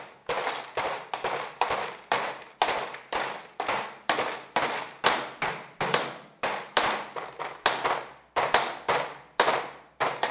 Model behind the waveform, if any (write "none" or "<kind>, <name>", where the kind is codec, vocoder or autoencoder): none